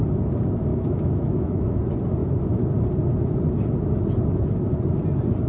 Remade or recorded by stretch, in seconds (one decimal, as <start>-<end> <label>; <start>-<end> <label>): 0.0-0.7 recorded; 0.7-1.8 remade; 1.8-5.5 recorded